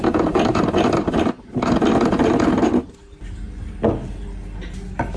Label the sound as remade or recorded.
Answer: recorded